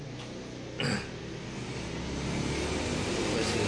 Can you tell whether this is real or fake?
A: real